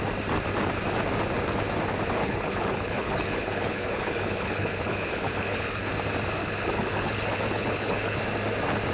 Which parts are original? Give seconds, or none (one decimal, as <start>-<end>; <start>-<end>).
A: 0.0-2.2; 5.9-6.4; 8.2-8.9